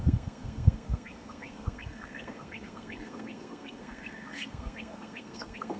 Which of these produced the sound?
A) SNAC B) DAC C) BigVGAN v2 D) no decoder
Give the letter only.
A